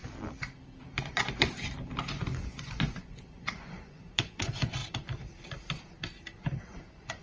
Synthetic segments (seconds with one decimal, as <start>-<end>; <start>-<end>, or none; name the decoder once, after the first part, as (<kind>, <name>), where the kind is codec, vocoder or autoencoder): 1.0-1.5 (vocoder, Vocos); 2.1-4.8; 6.6-7.2